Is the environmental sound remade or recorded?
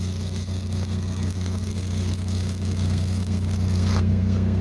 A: remade